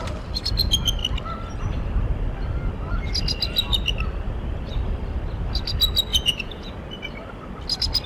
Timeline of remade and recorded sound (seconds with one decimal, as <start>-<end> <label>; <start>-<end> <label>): 0.0-6.1 recorded; 6.1-6.7 remade; 6.7-8.1 recorded